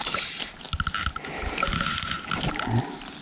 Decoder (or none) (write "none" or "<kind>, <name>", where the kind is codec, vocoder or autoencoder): none